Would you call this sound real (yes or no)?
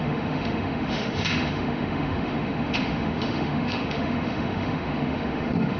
no